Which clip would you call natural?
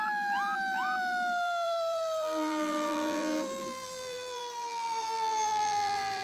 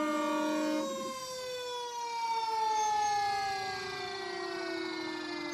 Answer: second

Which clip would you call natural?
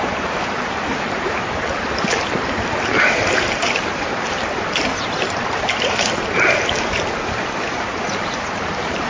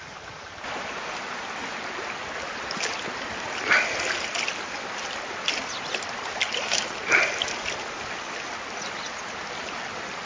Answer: second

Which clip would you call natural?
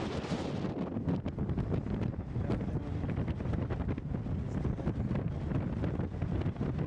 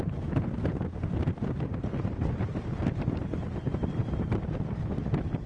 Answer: first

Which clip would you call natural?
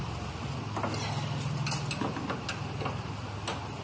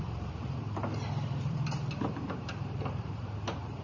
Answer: first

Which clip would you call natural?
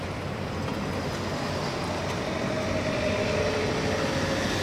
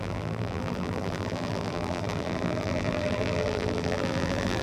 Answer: first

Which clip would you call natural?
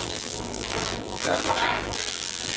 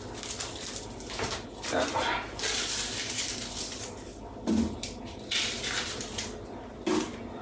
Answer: second